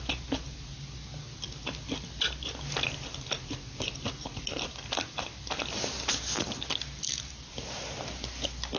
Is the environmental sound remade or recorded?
recorded